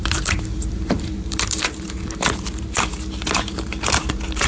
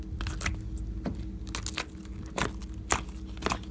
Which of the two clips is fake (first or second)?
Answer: first